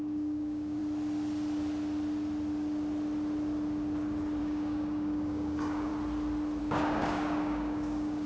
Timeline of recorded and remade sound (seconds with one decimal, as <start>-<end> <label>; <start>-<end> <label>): 0.0-0.8 remade; 0.8-4.4 recorded; 4.4-5.9 remade; 5.9-6.6 recorded; 6.6-8.3 remade